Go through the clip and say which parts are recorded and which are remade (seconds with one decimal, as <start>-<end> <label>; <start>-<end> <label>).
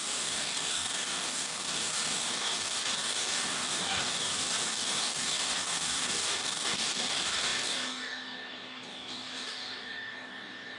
0.0-10.8 remade